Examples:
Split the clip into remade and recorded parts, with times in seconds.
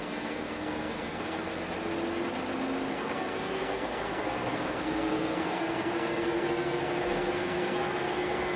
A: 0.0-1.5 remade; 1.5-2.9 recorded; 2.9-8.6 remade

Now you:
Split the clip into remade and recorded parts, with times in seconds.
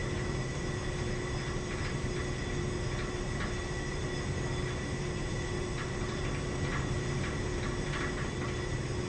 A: 0.0-9.1 recorded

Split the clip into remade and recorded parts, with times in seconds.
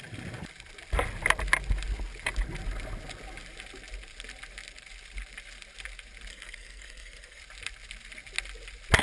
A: 0.0-6.3 recorded; 6.3-7.4 remade; 7.4-9.0 recorded